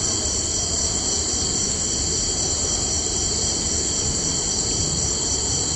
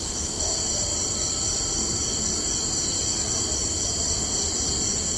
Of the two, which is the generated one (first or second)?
first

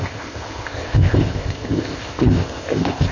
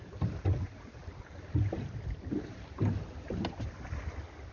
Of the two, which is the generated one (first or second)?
first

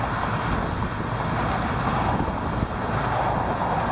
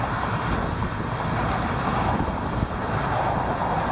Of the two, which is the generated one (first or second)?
second